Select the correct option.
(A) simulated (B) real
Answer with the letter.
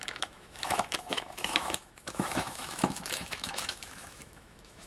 A